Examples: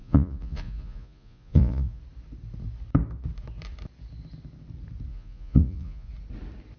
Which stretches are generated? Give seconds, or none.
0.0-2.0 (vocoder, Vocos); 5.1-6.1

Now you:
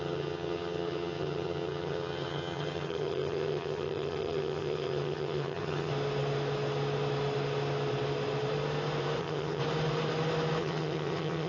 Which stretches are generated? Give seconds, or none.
0.0-5.9 (vocoder, HiFi-GAN); 9.2-9.6; 10.6-11.5

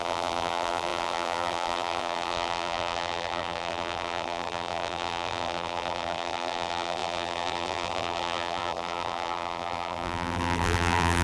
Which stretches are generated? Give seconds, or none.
0.0-11.2 (vocoder, BigVGAN v2)

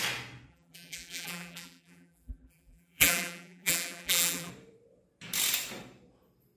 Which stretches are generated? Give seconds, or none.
0.5-4.5 (vocoder, BigVGAN v2)

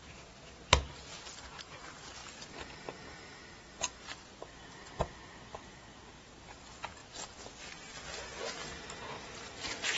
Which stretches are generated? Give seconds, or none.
none

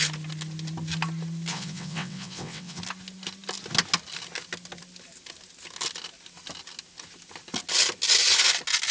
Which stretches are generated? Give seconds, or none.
1.5-2.8 (vocoder, WaveNeXt)

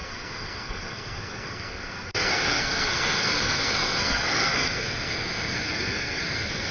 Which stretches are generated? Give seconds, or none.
0.0-6.7 (codec, SNAC)

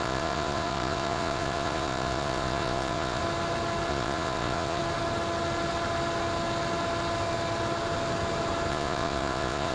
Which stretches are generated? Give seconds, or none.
0.0-3.2 (vocoder, Vocos); 3.9-4.8; 8.7-9.7